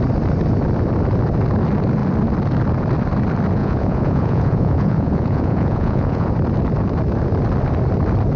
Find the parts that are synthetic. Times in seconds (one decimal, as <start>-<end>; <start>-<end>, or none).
3.6-6.3